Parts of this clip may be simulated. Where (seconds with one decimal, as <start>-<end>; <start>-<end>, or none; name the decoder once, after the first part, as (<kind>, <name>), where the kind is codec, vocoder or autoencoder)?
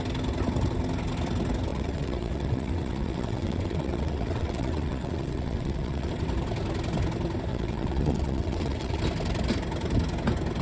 1.7-6.1 (vocoder, WaveNeXt); 7.5-9.0